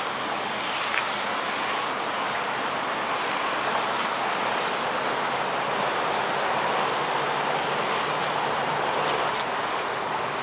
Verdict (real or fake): real